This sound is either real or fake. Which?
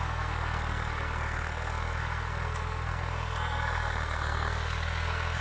fake